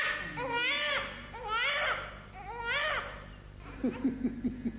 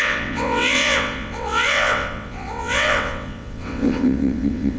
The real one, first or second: first